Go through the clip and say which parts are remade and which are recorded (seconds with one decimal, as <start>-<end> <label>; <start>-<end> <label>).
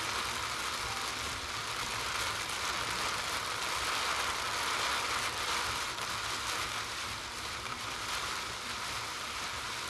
0.0-7.7 recorded; 7.7-8.3 remade; 8.3-9.9 recorded